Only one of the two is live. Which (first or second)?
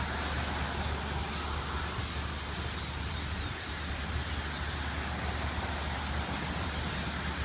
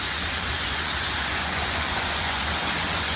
first